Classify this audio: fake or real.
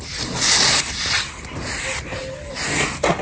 real